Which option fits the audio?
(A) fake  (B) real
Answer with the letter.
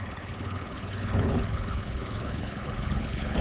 A